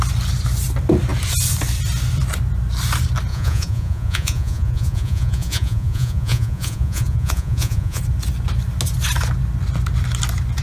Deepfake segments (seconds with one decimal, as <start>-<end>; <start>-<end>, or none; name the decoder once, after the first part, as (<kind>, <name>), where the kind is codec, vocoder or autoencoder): 3.3-8.0 (vocoder, Vocos)